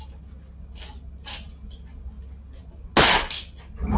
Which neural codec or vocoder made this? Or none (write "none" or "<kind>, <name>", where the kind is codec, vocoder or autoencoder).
none